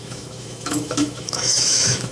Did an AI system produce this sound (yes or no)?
yes